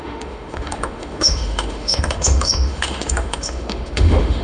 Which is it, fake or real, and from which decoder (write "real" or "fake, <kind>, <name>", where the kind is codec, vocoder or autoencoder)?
fake, autoencoder, DAC-VAE